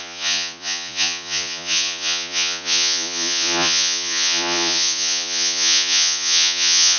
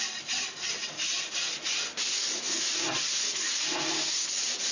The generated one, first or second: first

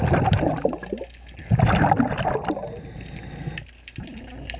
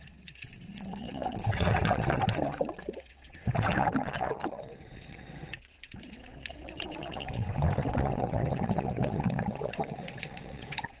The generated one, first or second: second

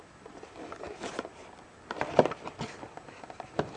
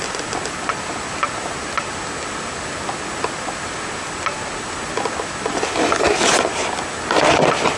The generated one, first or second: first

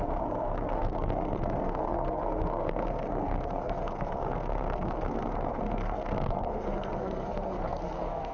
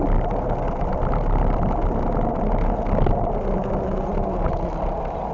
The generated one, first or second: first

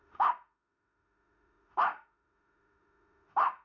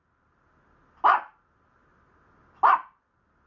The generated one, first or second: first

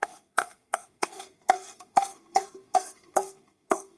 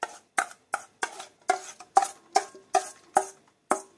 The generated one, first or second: first